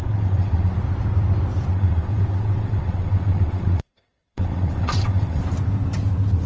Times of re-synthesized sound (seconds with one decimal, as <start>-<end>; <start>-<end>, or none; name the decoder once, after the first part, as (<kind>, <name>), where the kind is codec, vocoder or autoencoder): 0.0-0.7 (vocoder, WaveNeXt); 1.7-5.4